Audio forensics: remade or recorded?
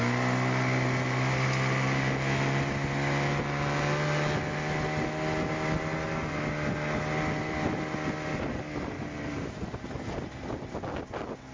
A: recorded